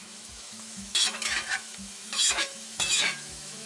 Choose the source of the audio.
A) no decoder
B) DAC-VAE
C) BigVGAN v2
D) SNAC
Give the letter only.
B